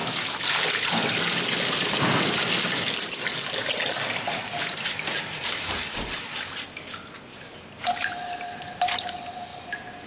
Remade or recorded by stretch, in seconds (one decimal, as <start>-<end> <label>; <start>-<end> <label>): 0.0-7.3 recorded; 7.3-8.1 remade; 8.1-9.5 recorded; 9.5-10.1 remade